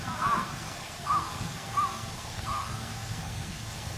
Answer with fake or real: fake